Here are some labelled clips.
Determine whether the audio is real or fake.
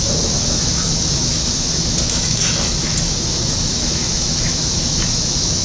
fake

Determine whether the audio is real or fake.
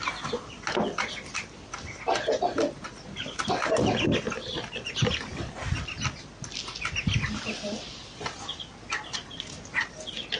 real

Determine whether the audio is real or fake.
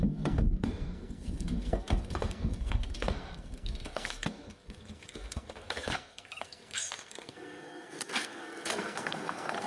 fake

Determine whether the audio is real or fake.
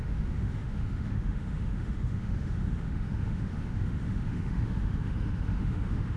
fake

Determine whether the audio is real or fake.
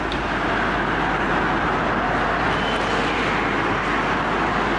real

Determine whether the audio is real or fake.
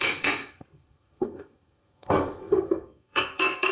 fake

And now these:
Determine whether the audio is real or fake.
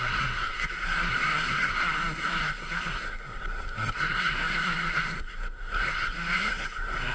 fake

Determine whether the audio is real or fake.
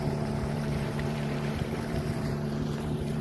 fake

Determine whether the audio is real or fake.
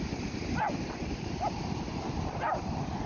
real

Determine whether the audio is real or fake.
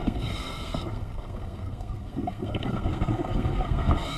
fake